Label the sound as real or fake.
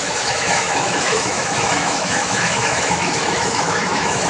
fake